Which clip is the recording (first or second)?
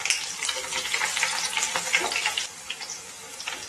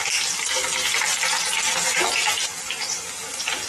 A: first